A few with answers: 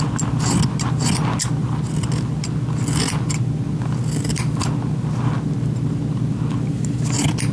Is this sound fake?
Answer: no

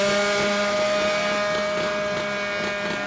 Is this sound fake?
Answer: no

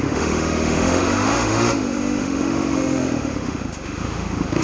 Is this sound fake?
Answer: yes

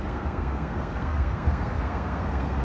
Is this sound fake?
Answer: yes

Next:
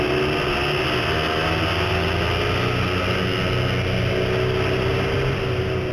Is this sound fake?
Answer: no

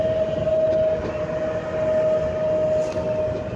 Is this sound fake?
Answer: no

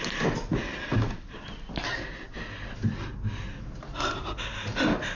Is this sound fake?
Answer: no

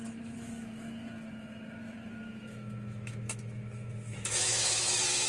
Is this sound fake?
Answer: yes